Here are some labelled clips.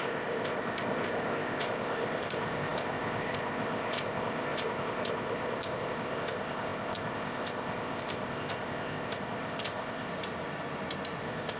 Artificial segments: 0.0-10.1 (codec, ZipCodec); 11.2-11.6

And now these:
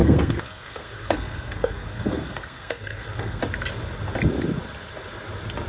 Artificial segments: 0.0-3.4 (codec, SNAC)